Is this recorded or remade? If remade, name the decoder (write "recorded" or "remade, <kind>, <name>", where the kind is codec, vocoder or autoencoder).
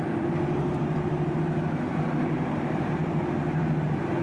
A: remade, vocoder, BigVGAN v2